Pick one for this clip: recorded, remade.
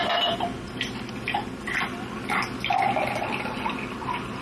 recorded